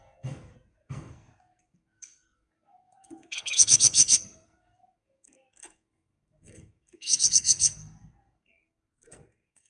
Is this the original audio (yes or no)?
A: no